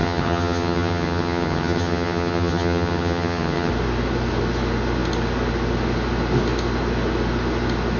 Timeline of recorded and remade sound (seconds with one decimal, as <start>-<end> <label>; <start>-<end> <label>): 0.0-3.7 remade; 3.7-8.0 recorded